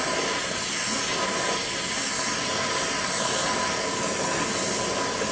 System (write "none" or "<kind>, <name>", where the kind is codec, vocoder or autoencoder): none